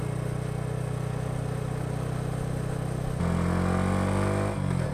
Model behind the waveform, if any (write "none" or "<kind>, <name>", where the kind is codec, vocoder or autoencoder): none